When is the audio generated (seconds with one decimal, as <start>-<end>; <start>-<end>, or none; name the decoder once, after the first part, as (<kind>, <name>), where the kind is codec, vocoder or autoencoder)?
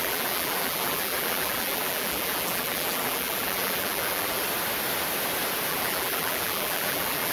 0.0-4.4 (vocoder, BigVGAN v2); 5.7-7.3